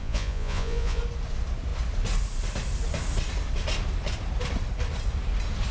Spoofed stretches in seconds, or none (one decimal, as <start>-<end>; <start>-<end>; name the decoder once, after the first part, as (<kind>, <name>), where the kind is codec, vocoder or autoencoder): 0.0-1.0 (vocoder, Vocos)